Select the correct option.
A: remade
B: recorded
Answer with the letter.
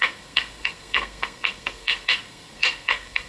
A